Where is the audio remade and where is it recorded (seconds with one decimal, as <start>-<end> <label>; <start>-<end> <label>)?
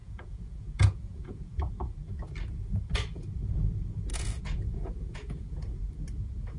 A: 0.0-1.7 remade; 1.7-4.1 recorded; 4.1-5.8 remade; 5.8-6.6 recorded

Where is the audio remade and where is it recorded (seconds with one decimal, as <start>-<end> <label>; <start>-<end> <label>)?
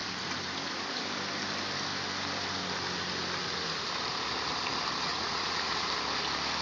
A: 0.0-5.1 recorded; 5.1-5.9 remade; 5.9-6.6 recorded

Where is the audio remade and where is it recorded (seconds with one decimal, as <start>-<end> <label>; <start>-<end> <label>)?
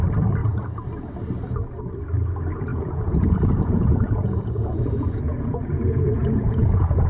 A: 0.0-2.7 recorded; 2.7-7.1 remade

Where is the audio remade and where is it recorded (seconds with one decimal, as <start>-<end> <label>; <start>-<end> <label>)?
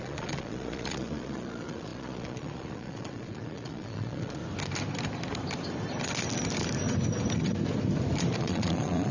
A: 0.0-4.4 remade; 4.4-8.4 recorded; 8.4-9.1 remade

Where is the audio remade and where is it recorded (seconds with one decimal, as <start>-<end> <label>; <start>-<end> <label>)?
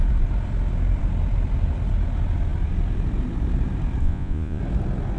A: 0.0-4.0 recorded; 4.0-4.6 remade; 4.6-5.2 recorded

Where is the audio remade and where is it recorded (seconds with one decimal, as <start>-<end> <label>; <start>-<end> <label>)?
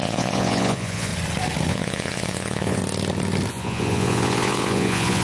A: 0.0-1.1 remade; 1.1-1.7 recorded; 1.7-2.8 remade; 2.8-3.5 recorded; 3.5-5.2 remade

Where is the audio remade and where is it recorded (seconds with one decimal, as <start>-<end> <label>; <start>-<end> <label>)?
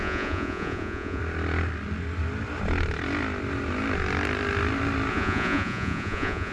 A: 0.0-1.2 remade; 1.2-5.1 recorded; 5.1-6.5 remade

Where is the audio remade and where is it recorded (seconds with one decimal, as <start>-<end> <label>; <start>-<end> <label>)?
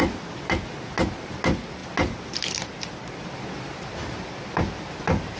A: 0.0-5.4 recorded